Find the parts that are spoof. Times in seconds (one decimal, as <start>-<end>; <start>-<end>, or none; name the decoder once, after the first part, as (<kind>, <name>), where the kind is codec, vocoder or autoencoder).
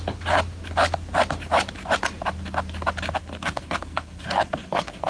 3.2-5.1 (codec, SNAC)